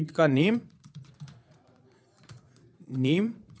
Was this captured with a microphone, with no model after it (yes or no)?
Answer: no